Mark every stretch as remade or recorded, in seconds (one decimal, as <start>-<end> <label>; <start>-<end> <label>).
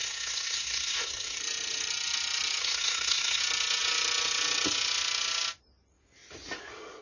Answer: 0.0-1.4 remade; 1.4-2.6 recorded; 2.6-3.4 remade; 3.4-7.0 recorded